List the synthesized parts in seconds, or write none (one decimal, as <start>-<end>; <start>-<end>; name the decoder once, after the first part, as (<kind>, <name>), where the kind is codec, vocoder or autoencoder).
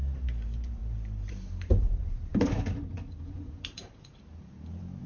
0.0-0.8 (vocoder, BigVGAN v2); 1.3-5.1